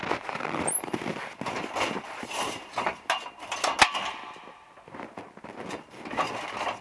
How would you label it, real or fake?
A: real